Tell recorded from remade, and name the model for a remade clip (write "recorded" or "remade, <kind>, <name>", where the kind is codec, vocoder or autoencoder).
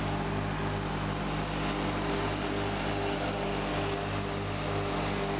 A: recorded